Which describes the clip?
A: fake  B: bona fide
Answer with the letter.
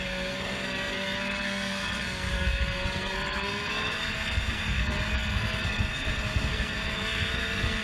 A